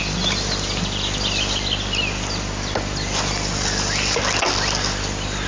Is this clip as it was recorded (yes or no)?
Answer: yes